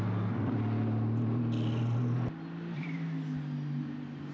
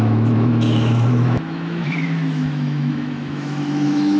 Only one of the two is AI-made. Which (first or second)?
second